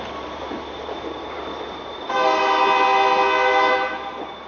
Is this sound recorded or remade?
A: recorded